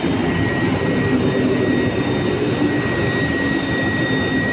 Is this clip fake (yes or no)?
no